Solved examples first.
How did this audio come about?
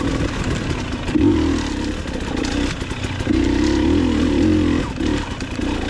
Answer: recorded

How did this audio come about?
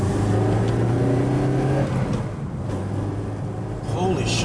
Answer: recorded